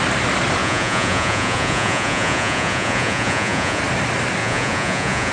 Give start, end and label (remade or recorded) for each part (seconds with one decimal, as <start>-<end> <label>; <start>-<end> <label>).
0.0-0.6 recorded; 0.6-3.8 remade; 3.8-4.4 recorded; 4.4-5.3 remade